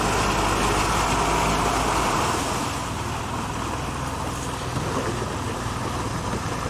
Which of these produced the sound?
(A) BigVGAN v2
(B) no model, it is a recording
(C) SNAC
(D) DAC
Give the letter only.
B